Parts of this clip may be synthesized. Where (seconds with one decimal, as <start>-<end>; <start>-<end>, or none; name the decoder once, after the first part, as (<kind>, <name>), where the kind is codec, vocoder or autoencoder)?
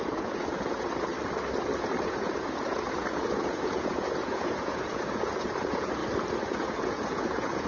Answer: 0.0-1.1 (vocoder, Vocos); 2.0-6.0; 6.5-7.7